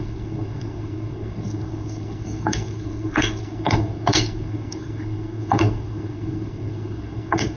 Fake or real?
fake